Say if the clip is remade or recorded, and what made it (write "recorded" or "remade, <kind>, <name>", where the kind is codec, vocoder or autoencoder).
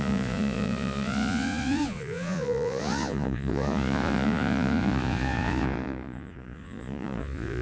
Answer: remade, vocoder, Vocos